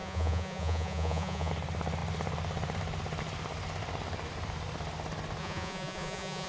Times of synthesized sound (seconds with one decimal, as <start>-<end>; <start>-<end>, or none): 0.0-1.5; 5.4-6.5